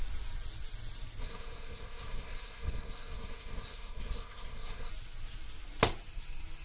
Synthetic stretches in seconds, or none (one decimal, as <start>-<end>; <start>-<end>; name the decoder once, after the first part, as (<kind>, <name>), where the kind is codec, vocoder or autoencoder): 1.2-4.9 (codec, SNAC)